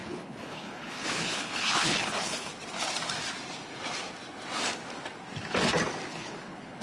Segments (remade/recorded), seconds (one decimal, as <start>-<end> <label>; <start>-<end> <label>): 0.0-2.5 remade; 2.5-6.1 recorded; 6.1-6.8 remade